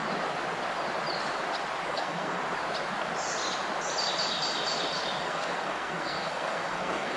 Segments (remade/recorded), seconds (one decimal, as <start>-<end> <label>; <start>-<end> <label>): 0.0-1.9 recorded; 1.9-2.4 remade; 2.4-5.2 recorded; 5.2-7.2 remade